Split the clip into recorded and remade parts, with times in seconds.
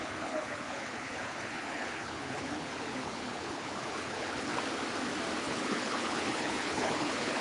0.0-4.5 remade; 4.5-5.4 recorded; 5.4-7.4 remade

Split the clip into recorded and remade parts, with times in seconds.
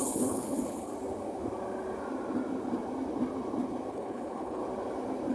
0.0-0.9 remade; 0.9-3.9 recorded; 3.9-4.6 remade; 4.6-5.3 recorded